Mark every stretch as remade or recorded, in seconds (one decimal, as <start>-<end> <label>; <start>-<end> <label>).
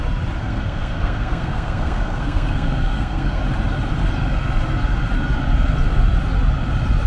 0.0-0.4 recorded; 0.4-3.4 remade; 3.4-7.1 recorded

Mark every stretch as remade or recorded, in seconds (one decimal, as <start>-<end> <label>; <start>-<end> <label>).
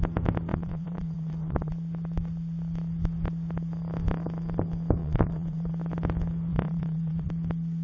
0.0-0.5 recorded; 0.5-1.7 remade; 1.7-5.0 recorded; 5.0-5.7 remade; 5.7-6.5 recorded; 6.5-7.3 remade; 7.3-7.8 recorded